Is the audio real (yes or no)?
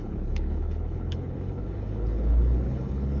no